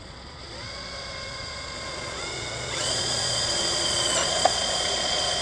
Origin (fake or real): fake